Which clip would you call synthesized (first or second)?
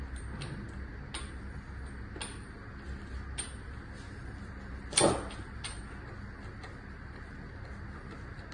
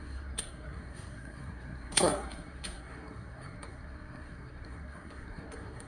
second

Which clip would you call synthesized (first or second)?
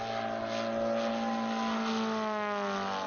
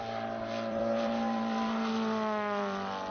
second